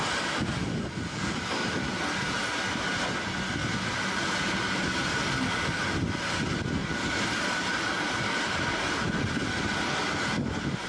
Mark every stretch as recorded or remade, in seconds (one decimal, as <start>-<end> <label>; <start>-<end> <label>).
0.0-6.8 recorded; 6.8-9.1 remade; 9.1-10.9 recorded